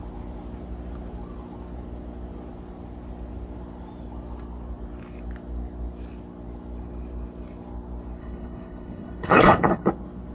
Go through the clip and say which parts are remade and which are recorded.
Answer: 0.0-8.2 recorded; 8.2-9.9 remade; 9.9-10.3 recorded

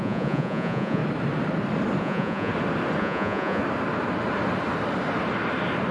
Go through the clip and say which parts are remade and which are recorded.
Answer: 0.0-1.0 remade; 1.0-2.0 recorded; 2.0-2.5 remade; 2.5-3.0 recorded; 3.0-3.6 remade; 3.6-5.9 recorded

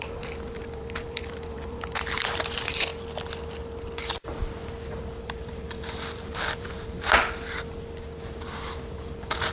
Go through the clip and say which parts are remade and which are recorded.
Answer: 0.0-2.9 remade; 2.9-4.9 recorded; 4.9-7.2 remade; 7.2-8.9 recorded; 8.9-9.5 remade

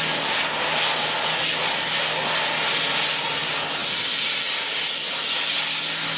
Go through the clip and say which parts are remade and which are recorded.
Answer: 0.0-6.2 recorded